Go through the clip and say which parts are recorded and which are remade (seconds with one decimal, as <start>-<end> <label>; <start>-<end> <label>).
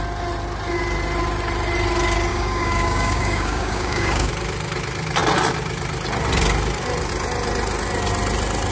0.0-2.3 recorded; 2.3-4.3 remade; 4.3-8.7 recorded